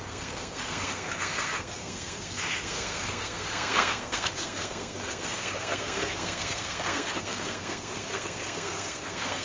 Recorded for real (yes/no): no